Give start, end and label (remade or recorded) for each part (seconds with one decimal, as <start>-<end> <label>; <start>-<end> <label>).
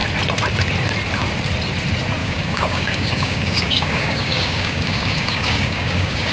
0.0-2.2 recorded; 2.2-6.3 remade